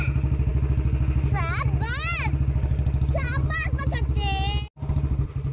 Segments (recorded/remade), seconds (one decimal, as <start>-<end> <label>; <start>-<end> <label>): 0.0-5.5 recorded